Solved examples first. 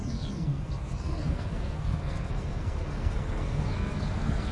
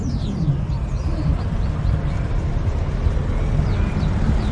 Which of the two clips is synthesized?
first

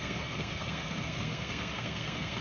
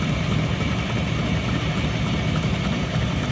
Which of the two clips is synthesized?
first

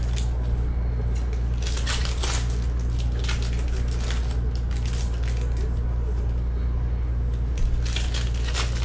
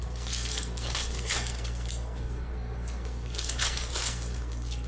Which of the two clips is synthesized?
second